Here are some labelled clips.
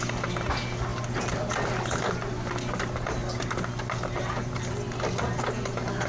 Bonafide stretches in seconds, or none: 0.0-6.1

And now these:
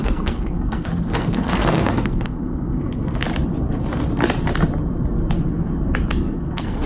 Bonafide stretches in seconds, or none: 3.2-6.1

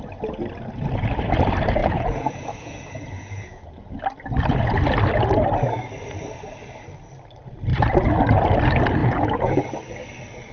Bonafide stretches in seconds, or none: 0.0-1.8; 4.0-9.0; 9.6-10.5

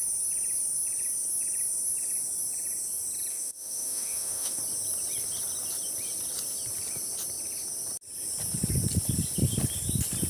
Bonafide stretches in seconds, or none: 0.0-3.3; 4.6-10.3

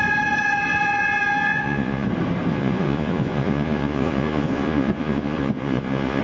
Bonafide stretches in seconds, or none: 0.0-1.5; 2.1-2.5